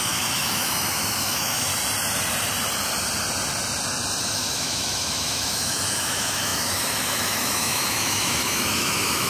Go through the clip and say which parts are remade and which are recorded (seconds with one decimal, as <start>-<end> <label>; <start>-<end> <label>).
0.0-1.7 remade; 1.7-4.2 recorded; 4.2-9.3 remade